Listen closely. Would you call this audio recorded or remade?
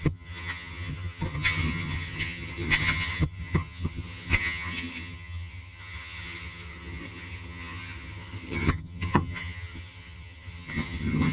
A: remade